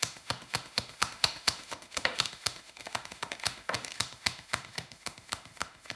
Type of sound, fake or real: fake